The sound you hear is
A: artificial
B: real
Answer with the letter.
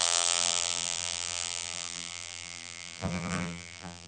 A